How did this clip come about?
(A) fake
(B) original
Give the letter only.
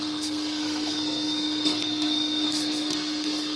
A